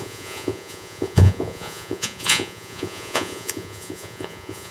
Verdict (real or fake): fake